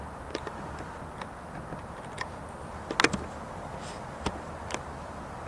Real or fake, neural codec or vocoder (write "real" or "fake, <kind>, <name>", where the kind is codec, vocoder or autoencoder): real